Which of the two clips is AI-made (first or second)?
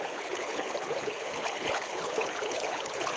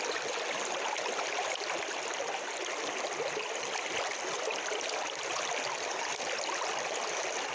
first